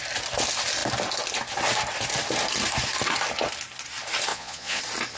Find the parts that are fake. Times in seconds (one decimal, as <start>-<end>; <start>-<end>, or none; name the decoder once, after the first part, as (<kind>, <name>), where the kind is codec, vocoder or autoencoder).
4.3-4.8 (vocoder, Vocos)

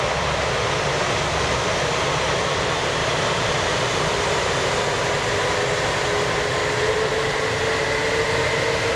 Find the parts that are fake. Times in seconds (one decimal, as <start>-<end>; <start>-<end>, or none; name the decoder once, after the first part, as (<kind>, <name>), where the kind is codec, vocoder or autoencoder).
3.0-4.8 (vocoder, BigVGAN v2)

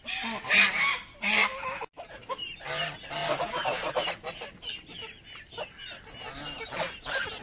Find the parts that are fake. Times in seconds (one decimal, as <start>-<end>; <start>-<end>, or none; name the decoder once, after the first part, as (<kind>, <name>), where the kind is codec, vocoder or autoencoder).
6.3-7.0 (vocoder, BigVGAN v2)

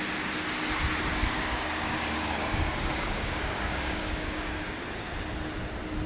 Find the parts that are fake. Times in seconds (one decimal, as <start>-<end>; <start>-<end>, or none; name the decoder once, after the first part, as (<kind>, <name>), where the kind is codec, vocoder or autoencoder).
1.1-4.8 (codec, DAC)

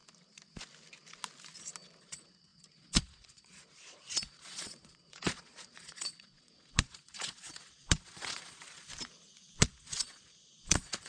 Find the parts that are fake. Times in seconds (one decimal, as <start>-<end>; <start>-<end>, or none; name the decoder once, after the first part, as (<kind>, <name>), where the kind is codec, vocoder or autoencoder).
2.0-8.9 (vocoder, Vocos); 9.7-11.1

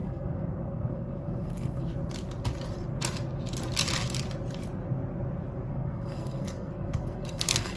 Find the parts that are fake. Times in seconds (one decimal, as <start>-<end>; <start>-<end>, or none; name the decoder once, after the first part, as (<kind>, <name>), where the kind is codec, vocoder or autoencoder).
0.0-1.9 (codec, SNAC); 5.7-7.8

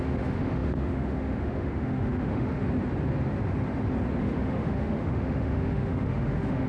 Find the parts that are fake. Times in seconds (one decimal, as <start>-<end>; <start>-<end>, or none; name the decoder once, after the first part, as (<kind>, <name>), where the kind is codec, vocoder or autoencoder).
0.0-2.6 (autoencoder, DAC-VAE); 4.2-6.7